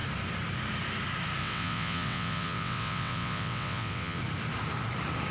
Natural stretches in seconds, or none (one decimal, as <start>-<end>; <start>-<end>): 0.0-1.4; 4.2-5.3